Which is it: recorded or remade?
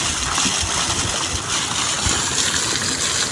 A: recorded